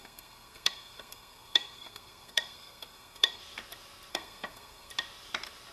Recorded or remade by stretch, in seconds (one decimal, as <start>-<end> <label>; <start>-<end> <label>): 0.0-3.4 remade; 3.4-4.1 recorded; 4.1-4.9 remade; 4.9-5.7 recorded